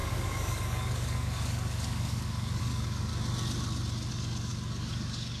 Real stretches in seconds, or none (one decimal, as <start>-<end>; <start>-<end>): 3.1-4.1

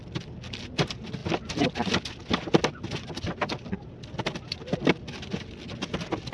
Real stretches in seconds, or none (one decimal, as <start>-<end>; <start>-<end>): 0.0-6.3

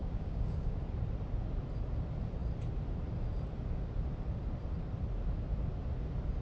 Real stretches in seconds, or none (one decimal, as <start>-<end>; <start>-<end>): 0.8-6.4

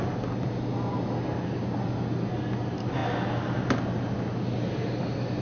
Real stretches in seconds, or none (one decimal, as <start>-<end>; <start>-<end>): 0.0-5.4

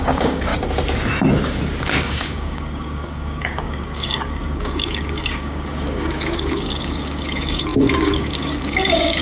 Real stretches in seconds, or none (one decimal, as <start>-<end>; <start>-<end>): 0.5-1.8

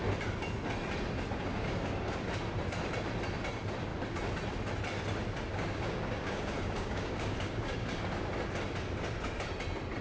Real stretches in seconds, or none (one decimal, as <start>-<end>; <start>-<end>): 0.0-1.5; 2.1-5.5; 7.9-10.0